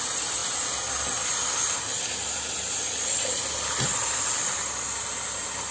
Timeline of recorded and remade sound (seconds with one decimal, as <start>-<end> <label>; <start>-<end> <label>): 0.0-5.7 recorded